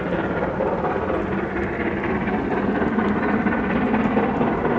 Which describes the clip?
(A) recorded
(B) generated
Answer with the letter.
A